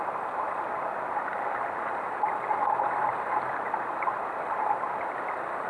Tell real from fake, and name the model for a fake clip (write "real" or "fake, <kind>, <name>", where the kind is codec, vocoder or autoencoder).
real